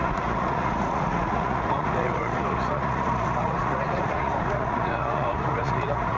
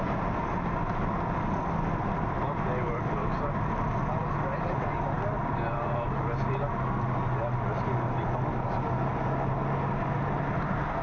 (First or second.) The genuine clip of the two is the second